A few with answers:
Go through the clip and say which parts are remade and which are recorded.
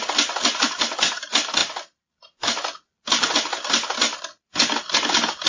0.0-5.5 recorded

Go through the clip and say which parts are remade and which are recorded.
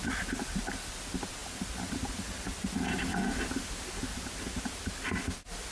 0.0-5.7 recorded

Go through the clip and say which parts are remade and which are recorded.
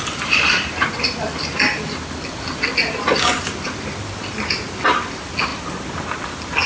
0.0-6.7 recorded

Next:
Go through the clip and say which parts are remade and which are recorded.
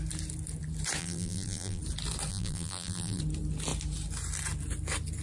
0.0-1.0 recorded; 1.0-1.8 remade; 1.8-2.3 recorded; 2.3-3.2 remade; 3.2-5.2 recorded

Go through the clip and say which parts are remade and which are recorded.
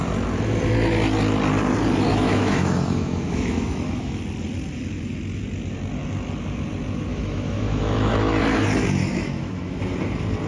0.0-2.1 recorded; 2.1-4.2 remade; 4.2-7.1 recorded; 7.1-8.4 remade; 8.4-9.0 recorded; 9.0-9.8 remade; 9.8-10.5 recorded